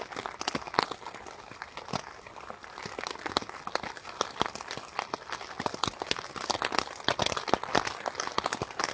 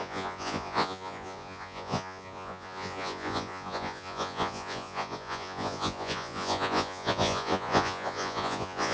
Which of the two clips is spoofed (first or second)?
second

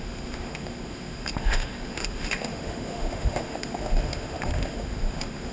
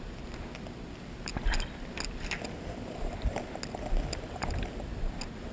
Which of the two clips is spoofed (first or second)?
first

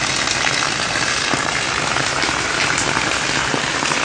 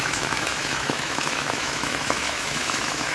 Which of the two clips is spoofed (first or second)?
second